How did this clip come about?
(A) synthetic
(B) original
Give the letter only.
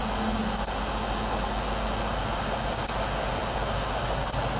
B